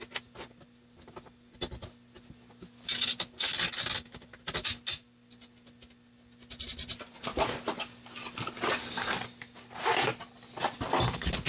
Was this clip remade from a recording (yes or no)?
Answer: no